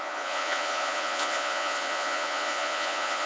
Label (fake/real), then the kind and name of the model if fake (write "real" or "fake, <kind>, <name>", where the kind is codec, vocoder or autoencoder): fake, vocoder, Vocos